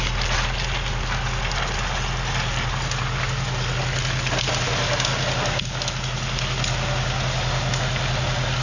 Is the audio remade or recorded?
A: recorded